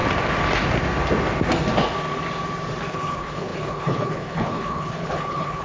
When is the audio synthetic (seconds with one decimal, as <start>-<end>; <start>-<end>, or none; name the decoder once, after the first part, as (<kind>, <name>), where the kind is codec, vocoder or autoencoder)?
2.9-5.6 (codec, HILCodec)